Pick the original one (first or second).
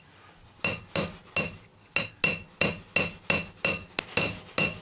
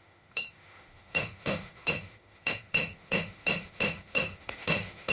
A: first